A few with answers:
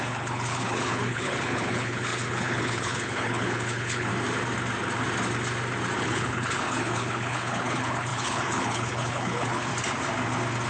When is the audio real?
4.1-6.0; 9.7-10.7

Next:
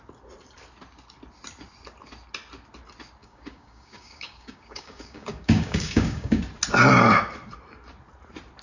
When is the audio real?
0.0-3.2; 6.4-8.6

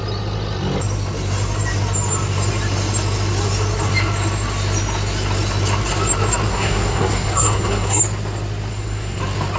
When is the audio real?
0.0-6.5; 8.0-8.7; 9.2-9.6

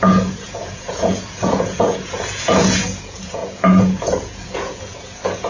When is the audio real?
none

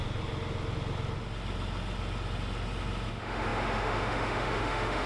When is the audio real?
0.0-3.1

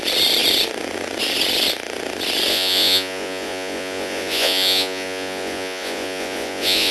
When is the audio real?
0.0-2.5